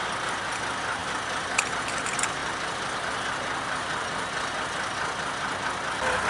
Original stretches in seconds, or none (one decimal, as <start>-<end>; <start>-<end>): 0.0-6.3